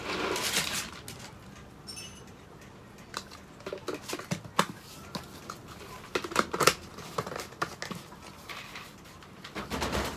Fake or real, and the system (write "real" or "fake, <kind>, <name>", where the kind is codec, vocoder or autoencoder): real